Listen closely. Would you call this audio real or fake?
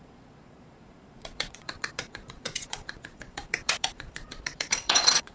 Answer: fake